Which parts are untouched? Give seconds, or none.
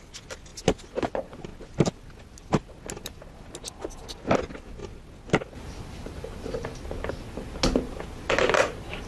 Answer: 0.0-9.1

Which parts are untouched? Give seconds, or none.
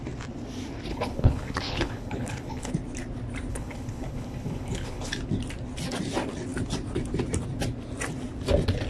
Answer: 0.0-0.9; 2.7-3.5; 5.1-8.9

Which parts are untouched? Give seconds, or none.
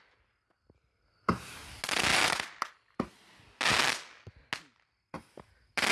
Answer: 0.0-5.9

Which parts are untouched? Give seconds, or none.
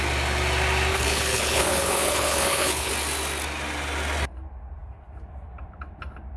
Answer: 0.0-0.9; 2.9-6.4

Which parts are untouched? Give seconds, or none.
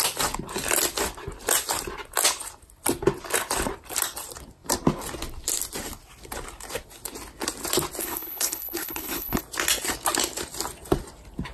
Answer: 0.0-8.0; 9.4-11.5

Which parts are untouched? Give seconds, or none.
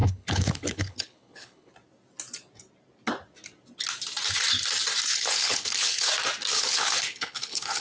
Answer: 1.7-5.1; 6.1-6.5